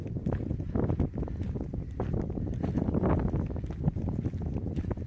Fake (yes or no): no